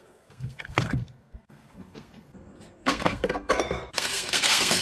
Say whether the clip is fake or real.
fake